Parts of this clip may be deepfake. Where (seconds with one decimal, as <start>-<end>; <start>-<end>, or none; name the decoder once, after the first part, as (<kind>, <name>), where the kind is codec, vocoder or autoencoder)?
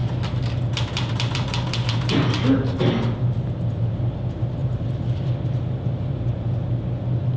4.6-6.6 (vocoder, BigVGAN v2)